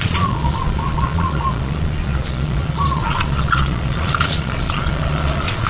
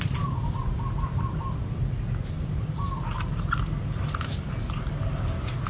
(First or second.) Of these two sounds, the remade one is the first